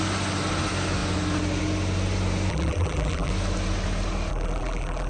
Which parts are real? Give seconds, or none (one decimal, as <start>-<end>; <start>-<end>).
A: 0.0-2.5; 3.3-4.3